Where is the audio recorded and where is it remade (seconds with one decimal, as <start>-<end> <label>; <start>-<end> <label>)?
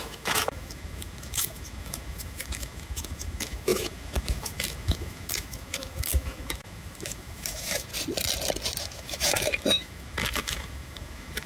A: 0.0-7.9 remade; 7.9-8.8 recorded; 8.8-11.5 remade